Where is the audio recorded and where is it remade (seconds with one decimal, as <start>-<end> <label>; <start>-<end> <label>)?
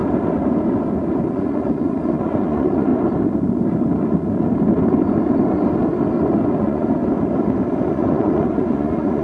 0.0-1.3 recorded; 1.3-2.9 remade; 2.9-6.5 recorded; 6.5-7.0 remade; 7.0-7.9 recorded; 7.9-9.2 remade